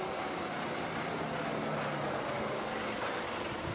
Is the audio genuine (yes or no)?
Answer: yes